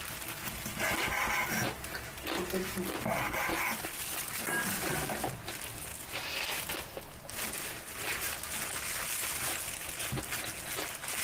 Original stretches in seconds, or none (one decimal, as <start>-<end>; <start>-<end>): 0.0-11.2